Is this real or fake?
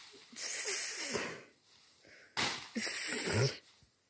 real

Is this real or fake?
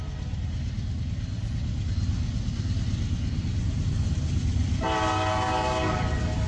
real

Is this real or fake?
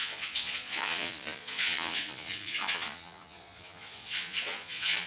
fake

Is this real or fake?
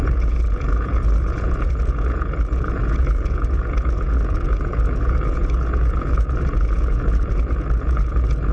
fake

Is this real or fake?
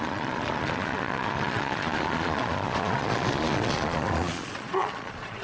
fake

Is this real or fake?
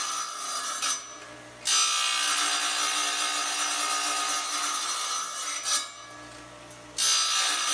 real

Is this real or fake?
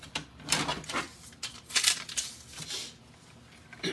real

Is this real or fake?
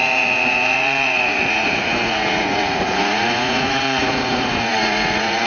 fake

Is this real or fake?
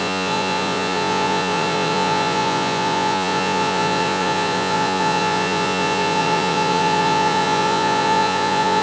fake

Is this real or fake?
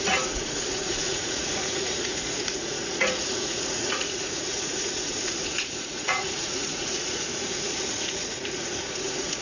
fake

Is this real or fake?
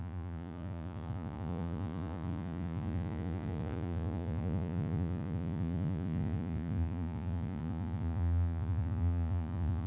fake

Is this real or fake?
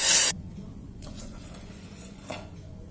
fake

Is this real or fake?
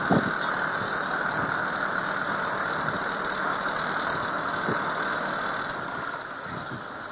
real